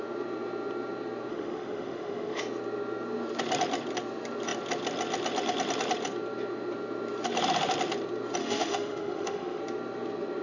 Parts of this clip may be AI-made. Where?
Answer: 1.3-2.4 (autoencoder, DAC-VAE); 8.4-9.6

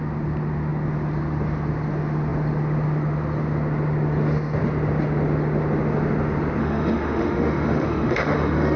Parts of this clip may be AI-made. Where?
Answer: 6.6-8.8 (autoencoder, DAC-VAE)

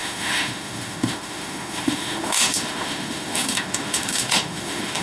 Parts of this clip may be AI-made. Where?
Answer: 0.0-5.0 (autoencoder, DAC-VAE)

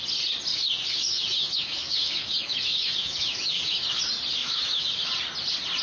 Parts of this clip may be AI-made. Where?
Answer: 0.5-4.0 (autoencoder, DAC-VAE); 4.4-5.1

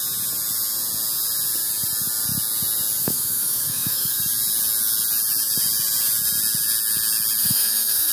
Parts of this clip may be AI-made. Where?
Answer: 3.0-4.2 (autoencoder, DAC-VAE); 7.4-8.1